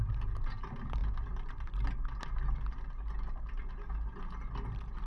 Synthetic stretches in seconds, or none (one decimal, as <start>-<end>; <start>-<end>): none